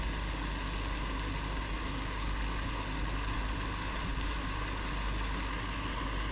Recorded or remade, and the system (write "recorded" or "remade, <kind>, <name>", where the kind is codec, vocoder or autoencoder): recorded